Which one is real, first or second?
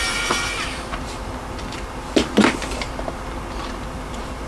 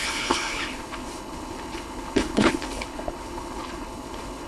first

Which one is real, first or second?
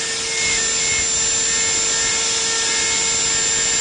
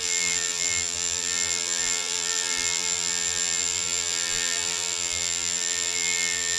first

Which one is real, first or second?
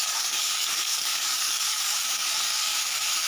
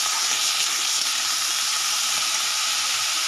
second